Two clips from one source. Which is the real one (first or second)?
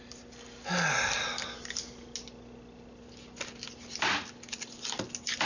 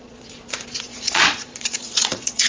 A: first